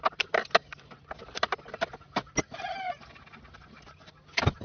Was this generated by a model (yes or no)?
no